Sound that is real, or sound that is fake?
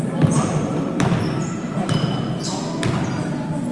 fake